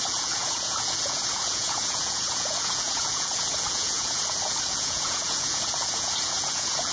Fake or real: fake